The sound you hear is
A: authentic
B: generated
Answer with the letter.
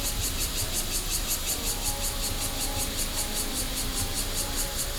B